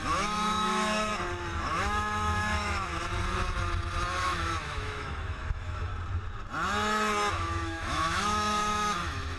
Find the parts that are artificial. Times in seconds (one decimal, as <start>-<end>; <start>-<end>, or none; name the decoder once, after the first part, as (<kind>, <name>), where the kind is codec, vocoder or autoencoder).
0.0-1.1 (autoencoder, DAC-VAE); 1.8-2.9; 4.2-5.9; 7.3-9.4